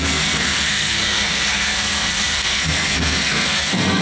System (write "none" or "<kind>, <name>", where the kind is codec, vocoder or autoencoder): codec, SNAC